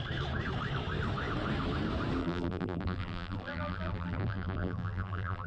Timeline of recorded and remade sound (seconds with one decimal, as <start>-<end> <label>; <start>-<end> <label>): 0.0-2.2 recorded; 2.2-5.5 remade